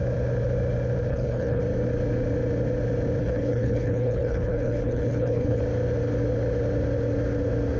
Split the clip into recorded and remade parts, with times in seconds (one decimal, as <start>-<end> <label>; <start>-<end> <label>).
0.0-1.1 recorded; 1.1-1.6 remade; 1.6-3.2 recorded; 3.2-5.6 remade; 5.6-7.8 recorded